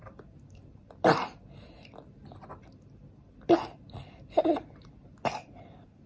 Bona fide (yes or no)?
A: yes